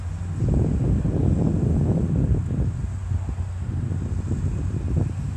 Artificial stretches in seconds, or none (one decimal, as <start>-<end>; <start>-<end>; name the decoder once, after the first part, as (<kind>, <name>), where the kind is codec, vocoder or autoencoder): none